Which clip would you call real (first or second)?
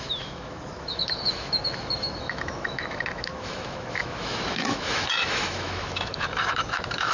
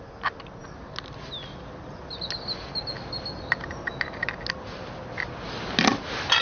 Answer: second